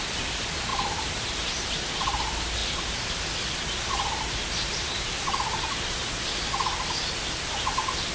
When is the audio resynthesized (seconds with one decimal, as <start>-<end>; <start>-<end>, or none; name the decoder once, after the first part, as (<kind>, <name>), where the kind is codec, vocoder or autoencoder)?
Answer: none